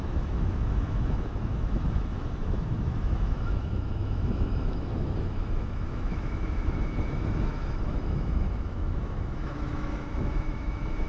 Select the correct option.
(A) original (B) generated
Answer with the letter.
B